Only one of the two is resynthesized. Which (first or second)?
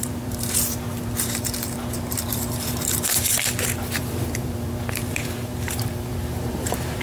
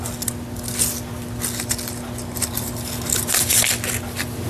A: first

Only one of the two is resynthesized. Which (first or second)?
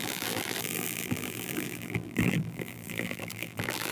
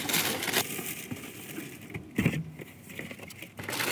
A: first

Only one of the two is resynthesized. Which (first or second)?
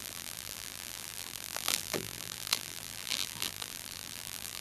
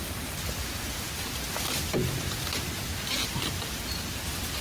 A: first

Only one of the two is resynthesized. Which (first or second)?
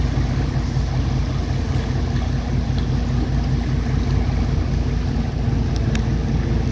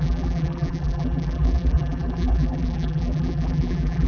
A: second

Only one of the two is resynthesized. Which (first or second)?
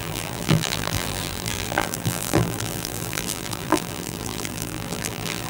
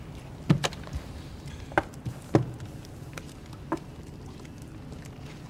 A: first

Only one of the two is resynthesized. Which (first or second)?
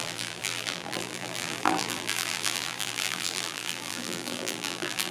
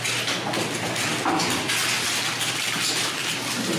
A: first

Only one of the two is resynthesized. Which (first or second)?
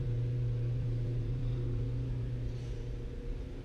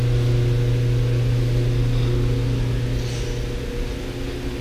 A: first